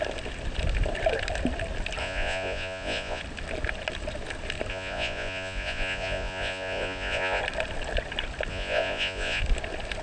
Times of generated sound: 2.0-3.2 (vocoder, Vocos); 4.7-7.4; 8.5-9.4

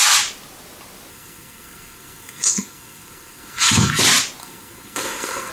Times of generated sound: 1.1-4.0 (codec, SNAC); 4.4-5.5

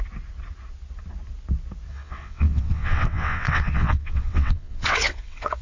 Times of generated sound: 1.9-5.6 (vocoder, WaveNeXt)

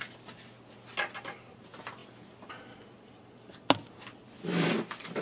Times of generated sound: none